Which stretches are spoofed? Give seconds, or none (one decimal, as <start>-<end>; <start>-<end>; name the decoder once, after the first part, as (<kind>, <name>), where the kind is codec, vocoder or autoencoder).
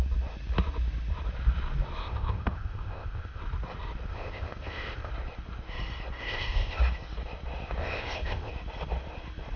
2.0-3.4 (codec, ZipCodec); 4.1-5.1; 6.2-6.8; 7.8-8.5